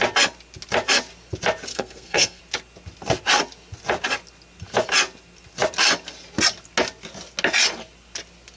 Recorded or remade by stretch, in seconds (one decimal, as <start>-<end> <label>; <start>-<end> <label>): 0.0-1.7 recorded; 1.7-2.4 remade; 2.4-8.6 recorded